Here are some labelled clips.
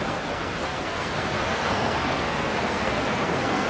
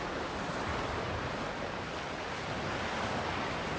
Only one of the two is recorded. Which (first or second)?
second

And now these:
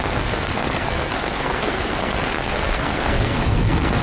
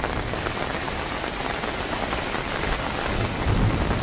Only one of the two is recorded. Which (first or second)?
second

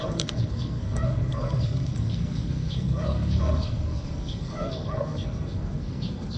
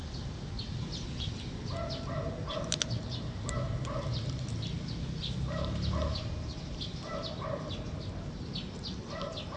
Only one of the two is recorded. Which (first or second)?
second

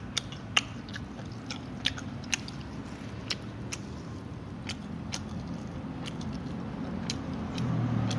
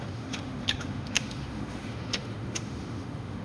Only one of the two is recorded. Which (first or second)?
first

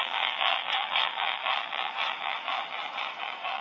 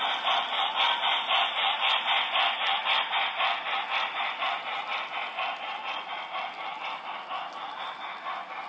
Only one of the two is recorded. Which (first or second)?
second